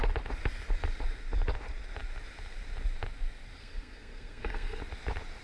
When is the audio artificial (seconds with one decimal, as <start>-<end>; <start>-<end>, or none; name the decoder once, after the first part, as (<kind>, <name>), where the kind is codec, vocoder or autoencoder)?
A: 3.6-4.8 (codec, SNAC)